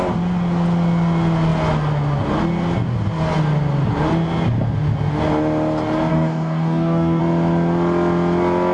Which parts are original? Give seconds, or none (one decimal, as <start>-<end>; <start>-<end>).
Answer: 0.0-6.1; 7.2-8.7